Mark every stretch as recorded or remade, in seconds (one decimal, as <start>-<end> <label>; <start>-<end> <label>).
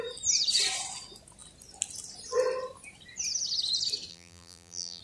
0.0-4.1 recorded; 4.1-5.0 remade